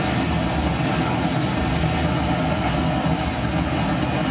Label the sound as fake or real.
real